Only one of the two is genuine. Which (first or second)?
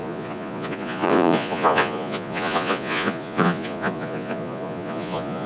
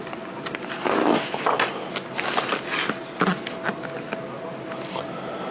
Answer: second